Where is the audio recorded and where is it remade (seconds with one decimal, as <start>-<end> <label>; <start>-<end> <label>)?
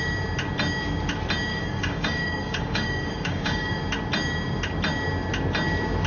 0.0-1.5 recorded; 1.5-3.8 remade; 3.8-6.1 recorded